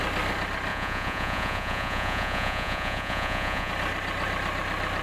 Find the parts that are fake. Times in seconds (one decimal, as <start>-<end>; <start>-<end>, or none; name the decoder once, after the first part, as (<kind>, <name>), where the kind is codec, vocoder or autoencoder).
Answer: 0.7-3.7 (vocoder, Vocos)